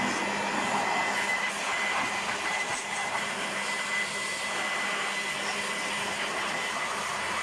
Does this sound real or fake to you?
real